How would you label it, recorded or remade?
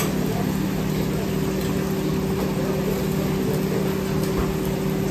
recorded